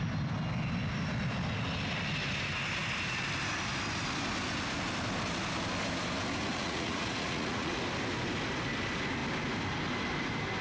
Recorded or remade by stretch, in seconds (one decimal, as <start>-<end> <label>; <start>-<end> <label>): 0.0-6.5 recorded; 6.5-7.8 remade; 7.8-10.6 recorded